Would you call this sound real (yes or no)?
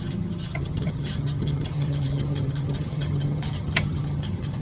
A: no